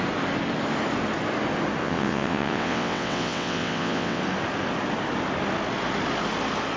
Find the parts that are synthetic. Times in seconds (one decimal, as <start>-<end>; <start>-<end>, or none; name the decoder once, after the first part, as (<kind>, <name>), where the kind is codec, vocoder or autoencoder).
1.8-4.2 (vocoder, WaveNeXt)